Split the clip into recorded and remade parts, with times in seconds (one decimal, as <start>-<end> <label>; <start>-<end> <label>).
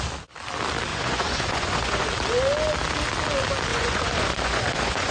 0.0-0.9 recorded; 0.9-2.1 remade; 2.1-3.7 recorded; 3.7-5.1 remade